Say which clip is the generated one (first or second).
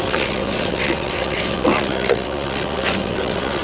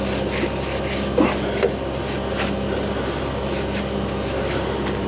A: first